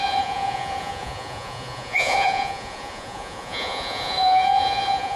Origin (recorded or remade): remade